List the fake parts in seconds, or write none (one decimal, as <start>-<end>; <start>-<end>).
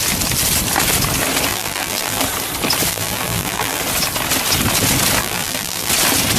1.5-2.2; 2.9-3.8; 5.2-5.9